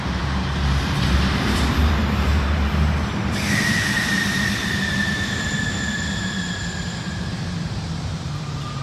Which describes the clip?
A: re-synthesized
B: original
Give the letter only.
A